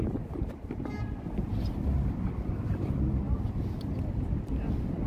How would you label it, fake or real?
real